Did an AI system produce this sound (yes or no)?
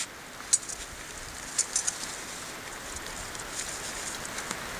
no